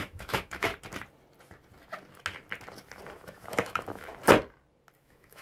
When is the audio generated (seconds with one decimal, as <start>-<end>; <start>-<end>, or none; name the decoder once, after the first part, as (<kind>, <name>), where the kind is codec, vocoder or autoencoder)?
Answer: 0.0-0.7 (autoencoder, DAC-VAE); 3.1-4.1; 5.0-5.4